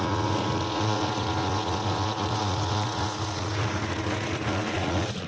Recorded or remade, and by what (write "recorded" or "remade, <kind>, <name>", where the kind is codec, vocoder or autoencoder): remade, vocoder, Vocos